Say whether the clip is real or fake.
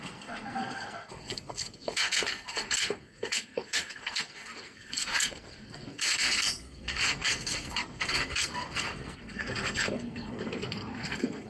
fake